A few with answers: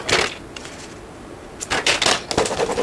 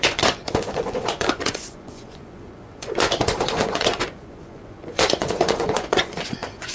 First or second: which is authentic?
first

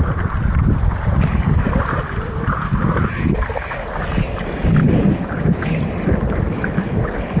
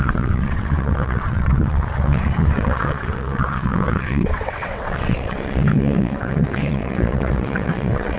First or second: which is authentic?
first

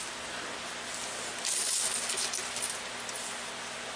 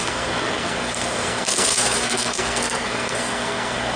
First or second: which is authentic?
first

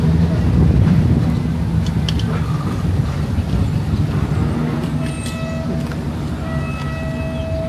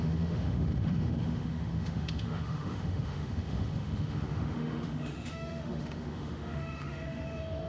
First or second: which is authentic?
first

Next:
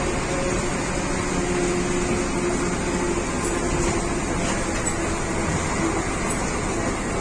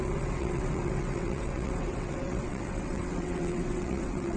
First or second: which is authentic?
first